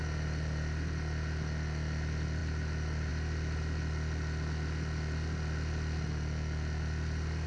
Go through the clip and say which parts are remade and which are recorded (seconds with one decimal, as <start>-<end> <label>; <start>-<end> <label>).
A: 0.0-7.5 recorded